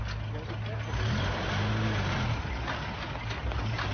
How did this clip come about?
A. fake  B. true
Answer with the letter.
B